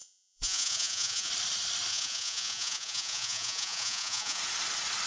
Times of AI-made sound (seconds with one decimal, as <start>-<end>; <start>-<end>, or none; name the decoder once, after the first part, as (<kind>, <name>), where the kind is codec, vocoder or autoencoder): 0.0-1.3 (vocoder, Vocos); 1.9-4.4